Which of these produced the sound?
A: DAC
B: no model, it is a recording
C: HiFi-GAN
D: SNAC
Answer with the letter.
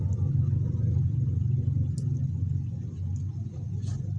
B